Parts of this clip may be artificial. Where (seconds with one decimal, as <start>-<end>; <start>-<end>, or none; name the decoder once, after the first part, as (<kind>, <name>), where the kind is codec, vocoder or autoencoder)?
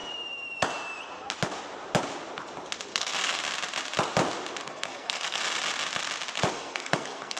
2.9-3.4 (codec, SNAC); 4.6-5.4; 6.5-7.4